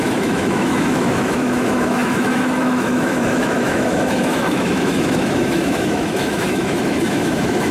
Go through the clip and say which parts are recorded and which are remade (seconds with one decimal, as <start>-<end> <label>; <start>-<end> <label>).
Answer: 0.0-7.7 remade